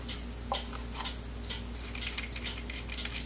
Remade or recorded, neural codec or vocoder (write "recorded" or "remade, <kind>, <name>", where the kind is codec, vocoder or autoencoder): recorded